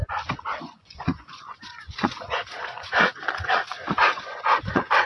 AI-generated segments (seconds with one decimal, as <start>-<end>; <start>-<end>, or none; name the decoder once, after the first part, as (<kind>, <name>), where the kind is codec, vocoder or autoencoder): 0.6-5.1 (vocoder, Vocos)